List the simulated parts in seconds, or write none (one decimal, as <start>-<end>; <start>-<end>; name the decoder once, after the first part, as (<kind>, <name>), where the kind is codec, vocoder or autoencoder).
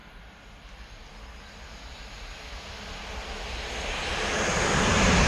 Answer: none